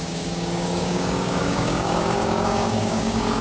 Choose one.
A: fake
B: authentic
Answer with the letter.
A